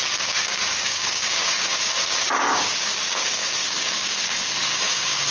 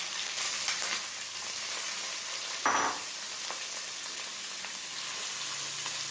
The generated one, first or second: first